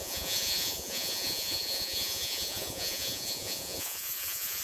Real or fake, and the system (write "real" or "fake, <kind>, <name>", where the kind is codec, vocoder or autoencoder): fake, vocoder, Vocos